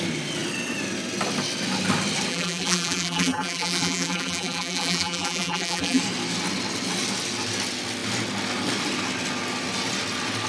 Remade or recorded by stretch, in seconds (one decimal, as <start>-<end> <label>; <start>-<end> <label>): 0.0-2.3 recorded; 2.3-6.0 remade; 6.0-10.5 recorded